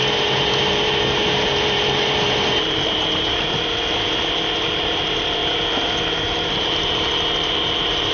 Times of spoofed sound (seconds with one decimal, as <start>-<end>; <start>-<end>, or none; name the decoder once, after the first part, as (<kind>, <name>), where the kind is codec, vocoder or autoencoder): 0.0-5.4 (vocoder, BigVGAN v2); 6.6-8.1